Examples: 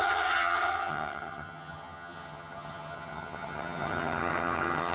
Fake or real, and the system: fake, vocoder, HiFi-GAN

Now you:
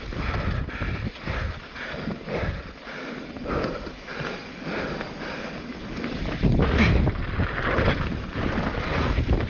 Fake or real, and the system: real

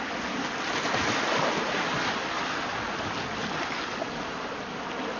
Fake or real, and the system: real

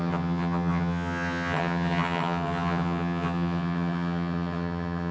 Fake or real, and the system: fake, vocoder, HiFi-GAN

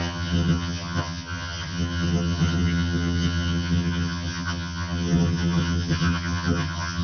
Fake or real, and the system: fake, vocoder, HiFi-GAN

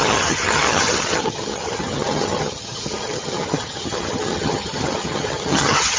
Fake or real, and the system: fake, vocoder, HiFi-GAN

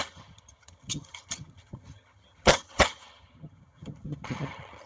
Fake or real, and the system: fake, vocoder, HiFi-GAN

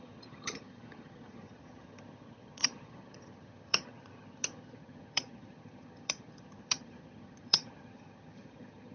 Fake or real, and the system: fake, vocoder, HiFi-GAN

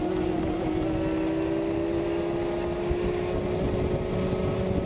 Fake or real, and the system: real